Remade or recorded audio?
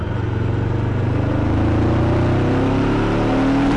recorded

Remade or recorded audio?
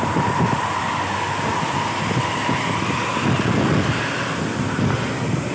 recorded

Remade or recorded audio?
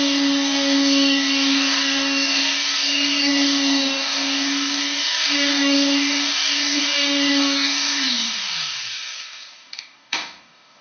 remade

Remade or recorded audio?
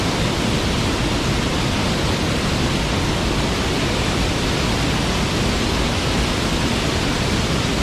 recorded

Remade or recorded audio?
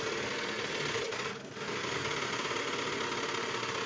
recorded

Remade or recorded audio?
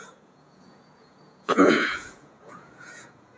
remade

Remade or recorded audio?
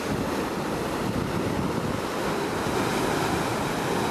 remade